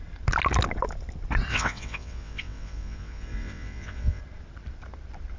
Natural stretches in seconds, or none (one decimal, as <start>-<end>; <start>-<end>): 0.0-1.5; 4.2-5.4